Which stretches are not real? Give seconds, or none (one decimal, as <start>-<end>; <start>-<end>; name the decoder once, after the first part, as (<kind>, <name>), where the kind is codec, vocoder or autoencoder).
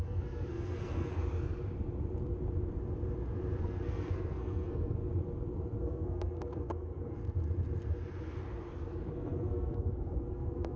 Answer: 0.0-1.1 (codec, SNAC); 3.6-5.0; 5.8-7.2; 9.1-10.8